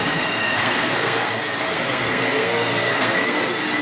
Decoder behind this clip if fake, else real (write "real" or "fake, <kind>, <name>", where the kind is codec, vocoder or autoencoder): fake, codec, SNAC